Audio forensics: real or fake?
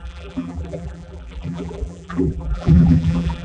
fake